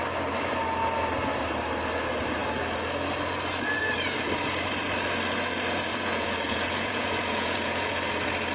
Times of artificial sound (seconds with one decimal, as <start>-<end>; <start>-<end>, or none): 5.9-8.1